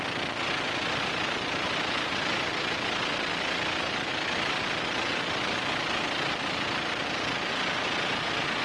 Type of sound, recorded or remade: recorded